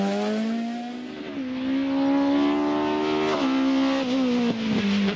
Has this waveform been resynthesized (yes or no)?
no